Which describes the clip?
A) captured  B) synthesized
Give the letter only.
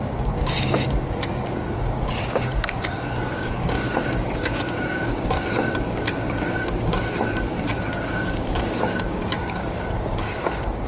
B